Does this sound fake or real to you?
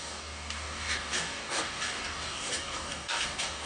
fake